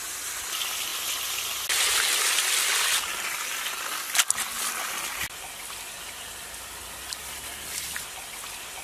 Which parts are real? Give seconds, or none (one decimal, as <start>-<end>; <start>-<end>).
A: 0.0-8.8